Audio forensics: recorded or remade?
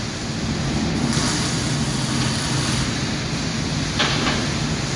recorded